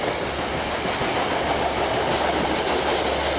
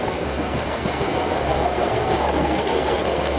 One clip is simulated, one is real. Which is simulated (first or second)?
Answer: second